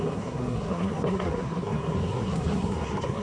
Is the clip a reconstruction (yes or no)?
yes